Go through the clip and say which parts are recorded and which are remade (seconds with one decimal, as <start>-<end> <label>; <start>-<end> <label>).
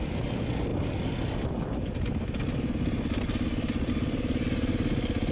0.0-5.3 recorded